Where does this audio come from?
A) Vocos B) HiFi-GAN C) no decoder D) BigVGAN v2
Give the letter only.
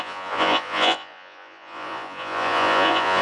A